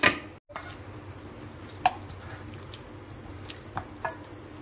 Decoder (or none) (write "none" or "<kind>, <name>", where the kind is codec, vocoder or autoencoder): none